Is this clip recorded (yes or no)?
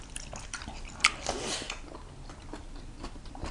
yes